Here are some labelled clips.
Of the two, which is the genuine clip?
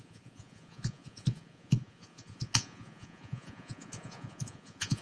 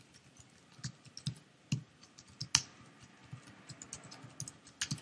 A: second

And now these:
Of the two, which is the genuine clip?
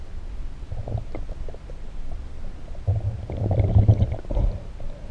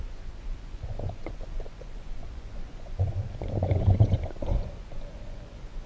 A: first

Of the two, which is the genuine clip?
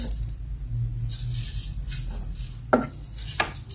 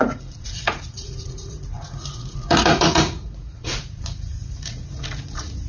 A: first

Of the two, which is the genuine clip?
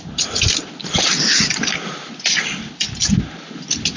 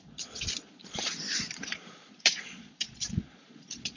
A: first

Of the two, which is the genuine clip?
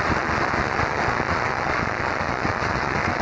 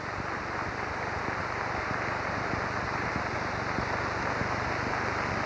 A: second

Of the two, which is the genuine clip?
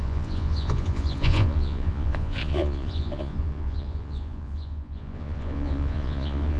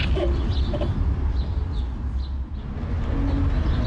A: second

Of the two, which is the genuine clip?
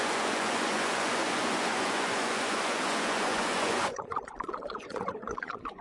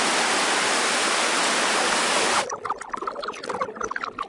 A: second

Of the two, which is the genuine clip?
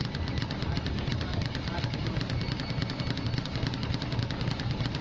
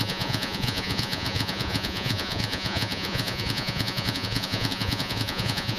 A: first